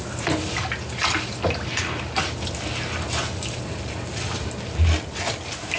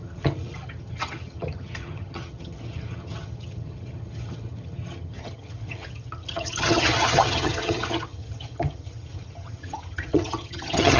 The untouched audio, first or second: first